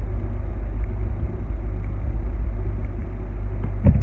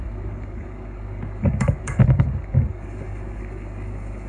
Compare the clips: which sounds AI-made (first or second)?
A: second